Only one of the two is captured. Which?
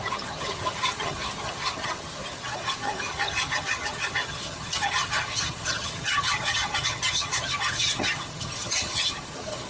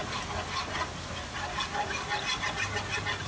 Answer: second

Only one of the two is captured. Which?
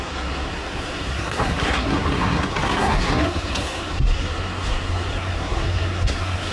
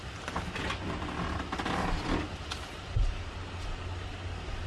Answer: second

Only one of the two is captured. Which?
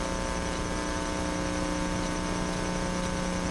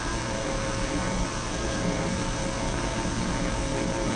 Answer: first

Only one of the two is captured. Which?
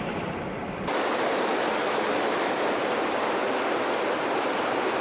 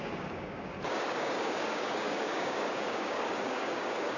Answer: first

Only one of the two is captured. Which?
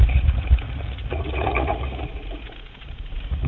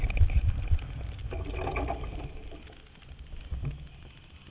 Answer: second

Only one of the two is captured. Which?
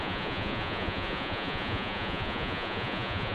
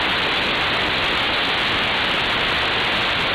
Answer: second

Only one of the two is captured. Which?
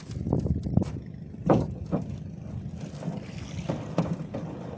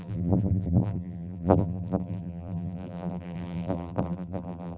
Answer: first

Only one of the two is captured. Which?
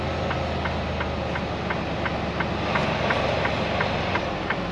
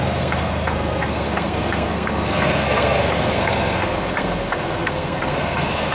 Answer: first